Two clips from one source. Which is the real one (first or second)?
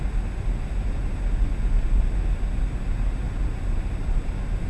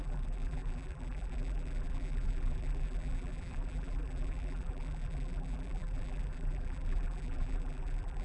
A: first